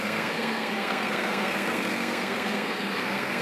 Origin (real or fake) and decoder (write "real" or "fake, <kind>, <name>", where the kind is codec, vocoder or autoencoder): fake, codec, SNAC